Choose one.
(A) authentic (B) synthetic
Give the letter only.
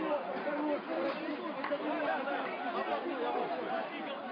A